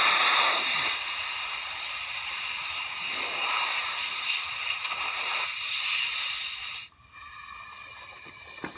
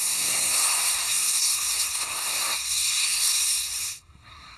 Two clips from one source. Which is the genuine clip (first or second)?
first